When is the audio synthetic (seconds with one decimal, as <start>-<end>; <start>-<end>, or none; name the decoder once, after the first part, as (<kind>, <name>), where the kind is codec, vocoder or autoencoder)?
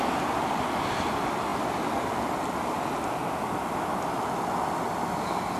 none